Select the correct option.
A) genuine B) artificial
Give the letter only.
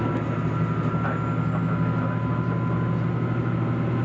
A